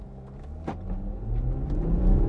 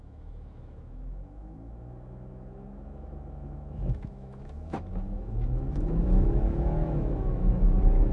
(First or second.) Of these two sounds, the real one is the first